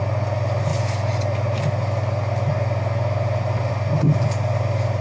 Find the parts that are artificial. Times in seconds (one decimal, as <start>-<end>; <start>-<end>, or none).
none